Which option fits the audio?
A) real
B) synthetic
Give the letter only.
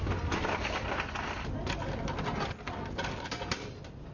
A